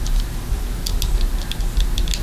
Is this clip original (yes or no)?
yes